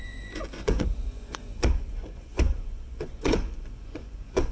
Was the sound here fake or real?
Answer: fake